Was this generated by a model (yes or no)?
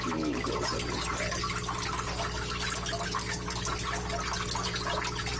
no